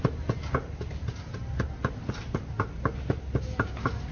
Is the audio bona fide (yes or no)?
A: yes